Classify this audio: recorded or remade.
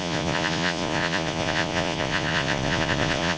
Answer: remade